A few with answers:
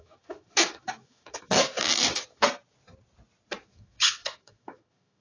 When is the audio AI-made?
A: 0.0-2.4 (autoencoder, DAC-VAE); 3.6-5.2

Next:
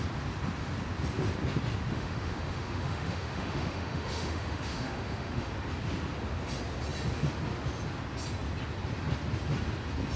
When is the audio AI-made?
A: 1.9-5.5 (autoencoder, DAC-VAE)

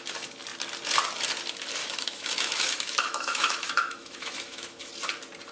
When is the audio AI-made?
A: 1.8-4.9 (autoencoder, DAC-VAE)

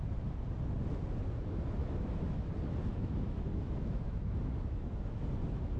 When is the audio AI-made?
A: 1.8-2.5 (autoencoder, DAC-VAE); 2.9-5.0

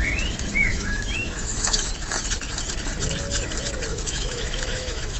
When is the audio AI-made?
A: 0.7-1.9 (autoencoder, DAC-VAE); 3.9-5.2

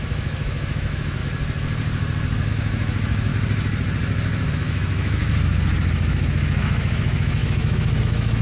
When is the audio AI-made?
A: 0.0-1.2 (autoencoder, DAC-VAE); 2.5-3.3; 4.5-5.2; 6.1-8.4

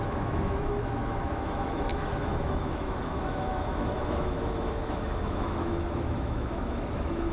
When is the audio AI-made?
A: 0.0-7.3 (autoencoder, DAC-VAE)